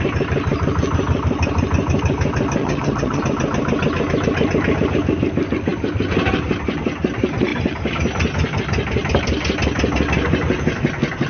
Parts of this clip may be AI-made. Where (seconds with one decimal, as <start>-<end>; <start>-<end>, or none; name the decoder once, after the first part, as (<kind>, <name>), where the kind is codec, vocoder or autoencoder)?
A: 2.6-3.2 (vocoder, HiFi-GAN)